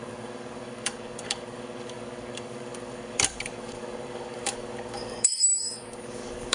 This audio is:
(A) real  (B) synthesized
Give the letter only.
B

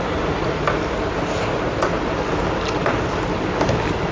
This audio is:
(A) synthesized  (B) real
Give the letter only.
B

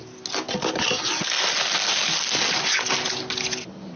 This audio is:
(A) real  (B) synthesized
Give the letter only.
A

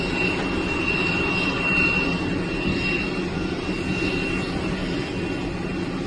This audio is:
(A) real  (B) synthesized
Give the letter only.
A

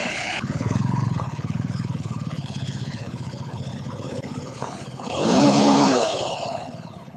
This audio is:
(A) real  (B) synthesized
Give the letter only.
B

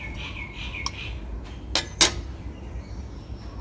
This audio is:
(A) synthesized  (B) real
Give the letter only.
B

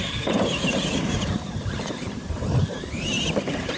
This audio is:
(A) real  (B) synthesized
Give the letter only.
B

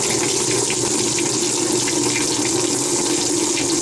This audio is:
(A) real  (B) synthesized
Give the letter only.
A